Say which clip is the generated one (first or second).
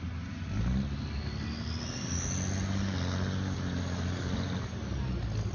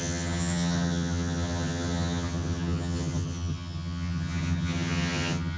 second